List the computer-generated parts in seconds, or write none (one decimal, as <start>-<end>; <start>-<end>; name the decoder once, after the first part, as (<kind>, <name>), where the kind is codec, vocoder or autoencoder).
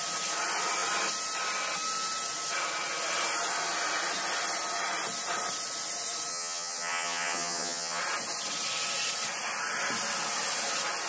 6.3-8.0 (vocoder, HiFi-GAN)